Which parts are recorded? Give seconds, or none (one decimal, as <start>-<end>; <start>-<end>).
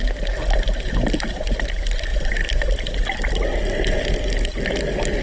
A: 0.0-5.2